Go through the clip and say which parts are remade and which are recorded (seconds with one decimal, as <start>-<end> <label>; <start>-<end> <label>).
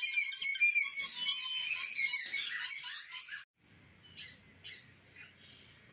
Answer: 0.0-5.9 recorded